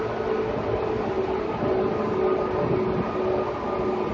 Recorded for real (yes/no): yes